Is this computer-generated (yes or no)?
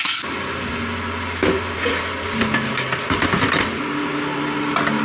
no